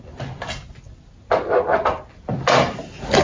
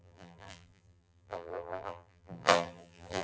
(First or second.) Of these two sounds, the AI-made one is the second